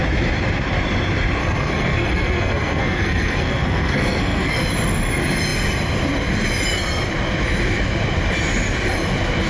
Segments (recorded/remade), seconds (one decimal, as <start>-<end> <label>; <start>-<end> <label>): 0.0-1.4 recorded; 1.4-4.6 remade; 4.6-9.5 recorded